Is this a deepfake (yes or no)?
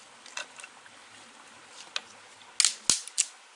no